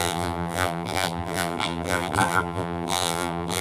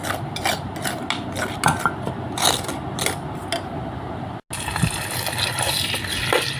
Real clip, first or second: second